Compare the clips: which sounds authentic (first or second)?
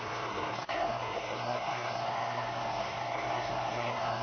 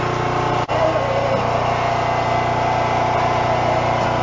second